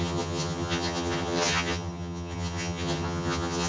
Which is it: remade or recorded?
remade